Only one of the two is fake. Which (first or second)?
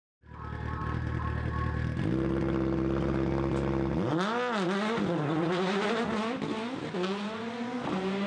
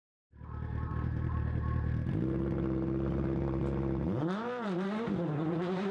second